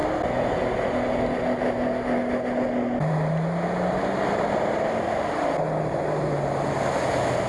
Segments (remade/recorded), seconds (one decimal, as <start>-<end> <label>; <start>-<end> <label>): 0.0-7.5 recorded